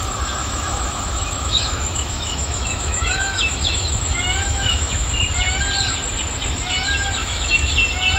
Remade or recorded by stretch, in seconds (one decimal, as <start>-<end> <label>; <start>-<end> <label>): 0.0-0.4 recorded; 0.4-5.1 remade; 5.1-7.2 recorded; 7.2-7.7 remade; 7.7-8.2 recorded